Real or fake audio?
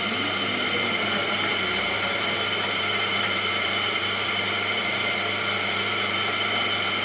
fake